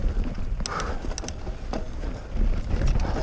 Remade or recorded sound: recorded